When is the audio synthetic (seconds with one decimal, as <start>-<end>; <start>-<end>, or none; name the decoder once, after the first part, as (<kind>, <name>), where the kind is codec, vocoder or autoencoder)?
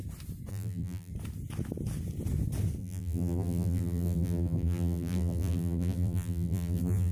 0.5-1.1 (vocoder, BigVGAN v2); 2.8-7.1